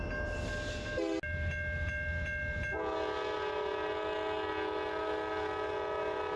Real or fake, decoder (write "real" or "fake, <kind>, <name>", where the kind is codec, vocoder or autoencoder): real